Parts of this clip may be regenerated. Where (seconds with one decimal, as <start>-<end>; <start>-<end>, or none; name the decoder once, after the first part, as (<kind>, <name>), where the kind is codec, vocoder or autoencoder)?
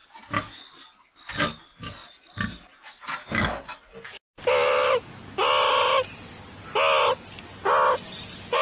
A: none